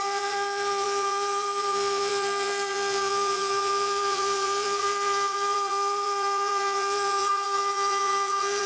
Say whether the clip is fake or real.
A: fake